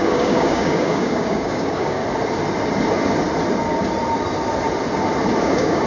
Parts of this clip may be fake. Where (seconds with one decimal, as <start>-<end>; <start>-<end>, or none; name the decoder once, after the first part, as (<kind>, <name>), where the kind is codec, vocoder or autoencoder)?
0.0-2.0 (codec, DAC); 5.4-5.9